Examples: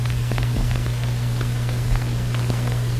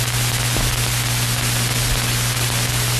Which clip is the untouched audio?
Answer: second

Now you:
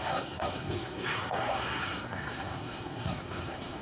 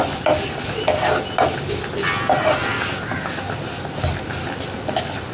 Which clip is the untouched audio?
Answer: second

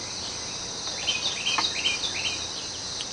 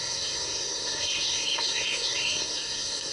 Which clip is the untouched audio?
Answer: first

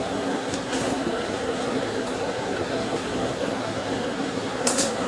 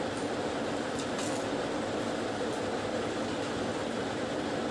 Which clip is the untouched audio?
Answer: second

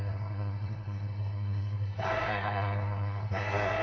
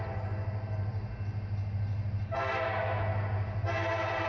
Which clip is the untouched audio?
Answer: second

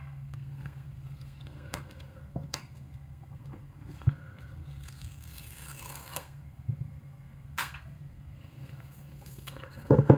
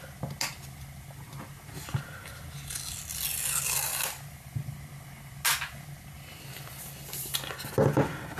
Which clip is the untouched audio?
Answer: second